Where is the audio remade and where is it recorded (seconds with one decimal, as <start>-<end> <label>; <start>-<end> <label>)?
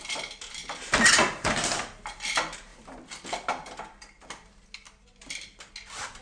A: 0.0-6.2 recorded